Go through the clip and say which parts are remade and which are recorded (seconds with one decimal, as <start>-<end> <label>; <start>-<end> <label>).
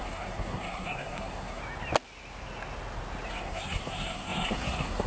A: 0.0-1.6 remade; 1.6-3.3 recorded; 3.3-5.1 remade